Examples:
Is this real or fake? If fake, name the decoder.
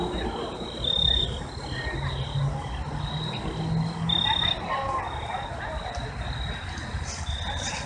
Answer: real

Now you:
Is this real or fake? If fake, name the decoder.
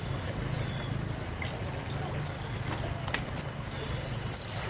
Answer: real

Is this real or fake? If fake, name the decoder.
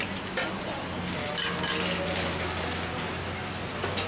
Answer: real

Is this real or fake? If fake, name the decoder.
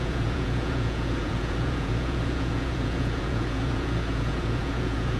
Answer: fake, vocoder, Vocos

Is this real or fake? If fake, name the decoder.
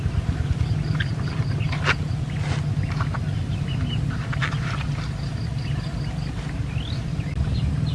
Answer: real